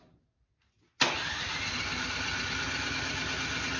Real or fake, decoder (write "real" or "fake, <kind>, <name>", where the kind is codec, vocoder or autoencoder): real